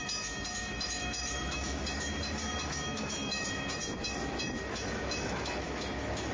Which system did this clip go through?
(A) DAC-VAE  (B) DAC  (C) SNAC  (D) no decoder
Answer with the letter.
A